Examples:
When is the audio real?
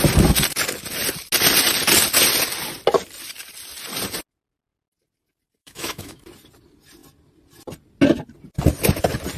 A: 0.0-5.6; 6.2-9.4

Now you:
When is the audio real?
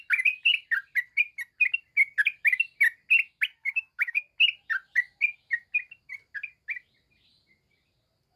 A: 0.0-3.6; 4.2-8.4